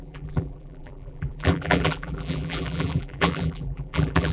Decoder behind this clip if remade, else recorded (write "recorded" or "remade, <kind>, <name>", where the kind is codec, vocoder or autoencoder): remade, vocoder, BigVGAN v2